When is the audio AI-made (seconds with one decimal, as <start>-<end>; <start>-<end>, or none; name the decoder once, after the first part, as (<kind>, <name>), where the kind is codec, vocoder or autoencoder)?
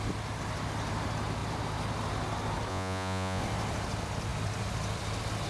2.7-3.4 (vocoder, Vocos)